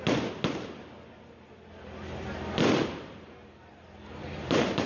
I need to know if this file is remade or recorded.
recorded